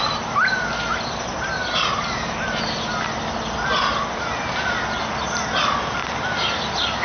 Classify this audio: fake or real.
real